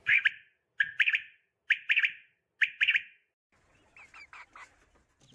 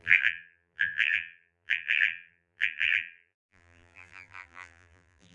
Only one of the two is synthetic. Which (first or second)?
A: second